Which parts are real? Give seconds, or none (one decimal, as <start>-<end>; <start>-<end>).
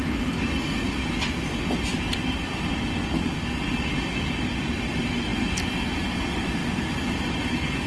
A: 0.0-7.9